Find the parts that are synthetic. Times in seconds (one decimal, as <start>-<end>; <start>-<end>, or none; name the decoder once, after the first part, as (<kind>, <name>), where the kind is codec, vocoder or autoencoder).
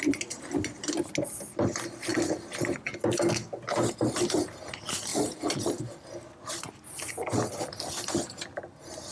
none